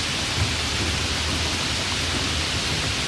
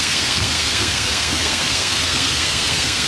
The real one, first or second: first